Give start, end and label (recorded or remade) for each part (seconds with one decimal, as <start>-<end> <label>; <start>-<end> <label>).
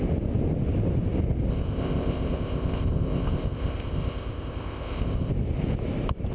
0.0-1.5 recorded; 1.5-5.3 remade; 5.3-6.3 recorded